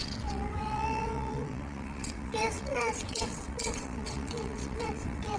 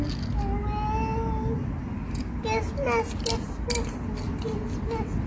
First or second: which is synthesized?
first